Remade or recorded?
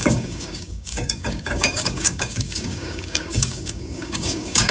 remade